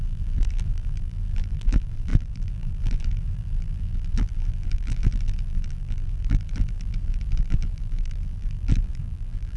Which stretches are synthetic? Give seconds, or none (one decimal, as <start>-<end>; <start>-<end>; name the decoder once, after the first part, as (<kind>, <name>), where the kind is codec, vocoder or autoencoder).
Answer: 0.0-9.6 (vocoder, BigVGAN v2)